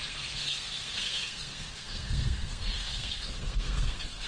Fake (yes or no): yes